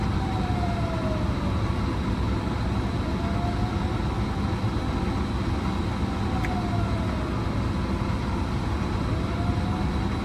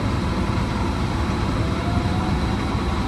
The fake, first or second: second